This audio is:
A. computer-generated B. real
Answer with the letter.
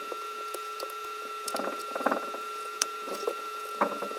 A